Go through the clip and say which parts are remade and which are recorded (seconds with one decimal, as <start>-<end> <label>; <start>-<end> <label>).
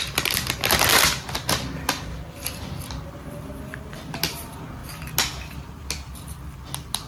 0.0-7.1 recorded